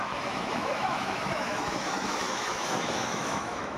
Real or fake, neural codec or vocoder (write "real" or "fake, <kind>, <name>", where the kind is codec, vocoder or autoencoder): fake, autoencoder, DAC-VAE